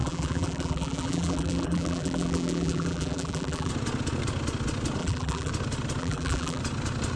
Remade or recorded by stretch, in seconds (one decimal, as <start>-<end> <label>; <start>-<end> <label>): 0.0-3.7 remade; 3.7-5.0 recorded; 5.0-5.5 remade; 5.5-6.0 recorded; 6.0-6.6 remade; 6.6-7.2 recorded

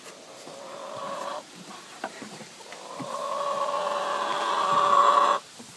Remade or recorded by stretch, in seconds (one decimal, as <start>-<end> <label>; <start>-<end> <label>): 0.0-1.0 recorded; 1.0-3.6 remade; 3.6-5.8 recorded

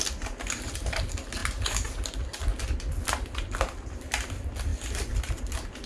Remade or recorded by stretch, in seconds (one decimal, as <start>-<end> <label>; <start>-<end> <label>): 0.0-4.7 recorded; 4.7-5.4 remade; 5.4-5.9 recorded

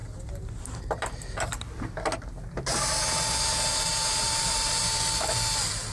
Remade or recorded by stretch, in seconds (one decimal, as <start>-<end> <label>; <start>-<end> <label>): 0.0-3.9 recorded; 3.9-4.8 remade; 4.8-5.9 recorded

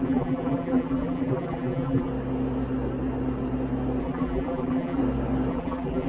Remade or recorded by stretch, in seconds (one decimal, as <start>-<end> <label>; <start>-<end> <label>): 0.0-2.1 remade; 2.1-4.0 recorded; 4.0-5.0 remade; 5.0-5.5 recorded; 5.5-6.1 remade

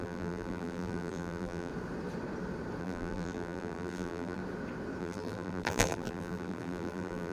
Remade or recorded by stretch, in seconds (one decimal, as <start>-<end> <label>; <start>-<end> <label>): 0.0-1.7 remade; 1.7-2.8 recorded; 2.8-4.4 remade; 4.4-5.0 recorded; 5.0-7.3 remade

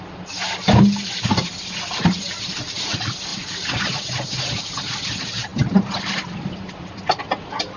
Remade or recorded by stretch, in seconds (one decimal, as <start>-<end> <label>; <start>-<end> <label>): 0.0-7.8 recorded